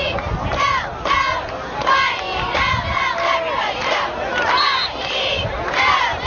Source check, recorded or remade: recorded